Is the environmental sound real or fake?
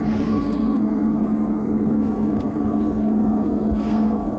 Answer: fake